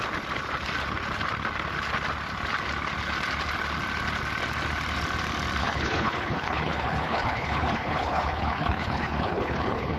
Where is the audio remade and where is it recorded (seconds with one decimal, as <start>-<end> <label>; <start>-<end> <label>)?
0.0-5.6 recorded; 5.6-10.0 remade